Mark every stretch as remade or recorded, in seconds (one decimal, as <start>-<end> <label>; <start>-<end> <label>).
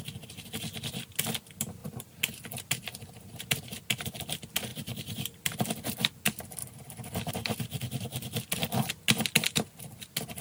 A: 0.0-10.4 recorded